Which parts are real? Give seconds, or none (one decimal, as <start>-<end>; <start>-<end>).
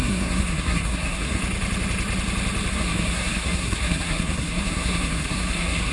1.4-2.7